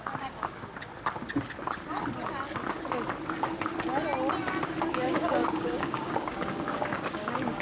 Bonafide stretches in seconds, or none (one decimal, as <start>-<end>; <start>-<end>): 0.7-4.9